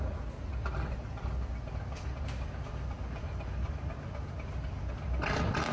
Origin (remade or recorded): recorded